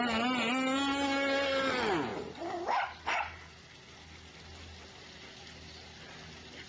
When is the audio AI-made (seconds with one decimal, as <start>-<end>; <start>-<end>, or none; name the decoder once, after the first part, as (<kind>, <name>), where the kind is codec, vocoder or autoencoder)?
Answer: none